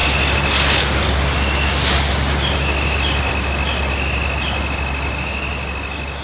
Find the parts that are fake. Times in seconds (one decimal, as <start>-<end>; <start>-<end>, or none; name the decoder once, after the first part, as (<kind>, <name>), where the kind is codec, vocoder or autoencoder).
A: none